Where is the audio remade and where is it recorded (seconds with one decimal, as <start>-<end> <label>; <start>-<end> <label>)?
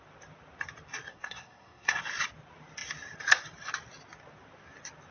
0.0-1.1 recorded; 1.1-2.0 remade; 2.0-5.1 recorded